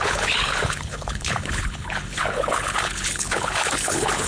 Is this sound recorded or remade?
remade